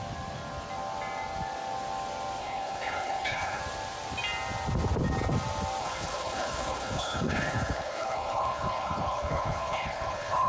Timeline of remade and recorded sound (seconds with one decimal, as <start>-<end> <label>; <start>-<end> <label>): 0.0-2.4 recorded; 2.4-3.6 remade; 3.6-5.8 recorded; 5.8-10.5 remade